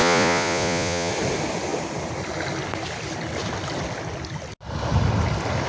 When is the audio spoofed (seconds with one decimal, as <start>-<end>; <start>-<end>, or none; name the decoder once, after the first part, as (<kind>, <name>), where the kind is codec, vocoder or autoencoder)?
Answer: 0.0-1.1 (vocoder, Vocos)